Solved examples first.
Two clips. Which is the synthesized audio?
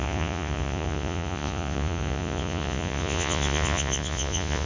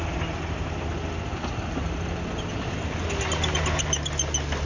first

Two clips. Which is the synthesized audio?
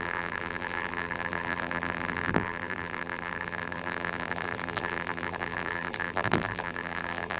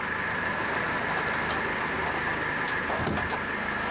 first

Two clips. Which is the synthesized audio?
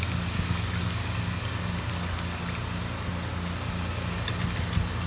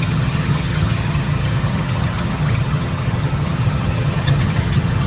second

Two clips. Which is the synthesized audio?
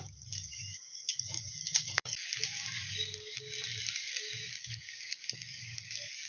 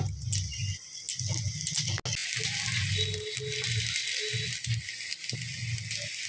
first